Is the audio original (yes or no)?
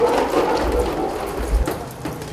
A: yes